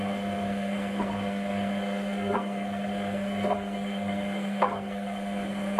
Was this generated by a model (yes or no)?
yes